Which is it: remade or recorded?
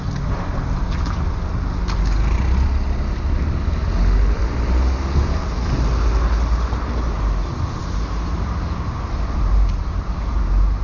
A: recorded